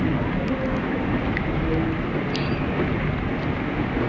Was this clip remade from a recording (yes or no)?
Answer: no